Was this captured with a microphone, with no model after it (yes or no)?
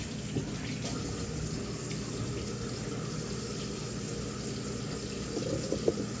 yes